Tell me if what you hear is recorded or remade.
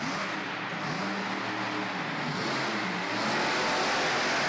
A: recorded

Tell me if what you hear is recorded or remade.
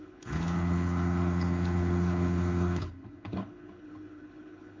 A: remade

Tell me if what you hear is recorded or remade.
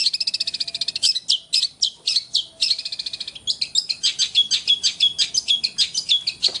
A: recorded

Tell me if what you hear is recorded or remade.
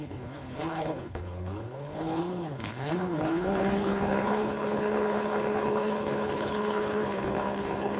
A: remade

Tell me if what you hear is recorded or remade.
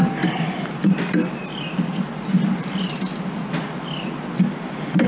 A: recorded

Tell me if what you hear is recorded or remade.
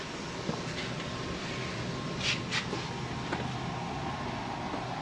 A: recorded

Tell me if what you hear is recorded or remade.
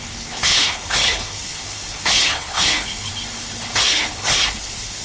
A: remade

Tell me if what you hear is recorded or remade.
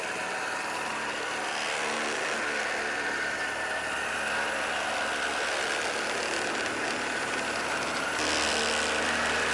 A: recorded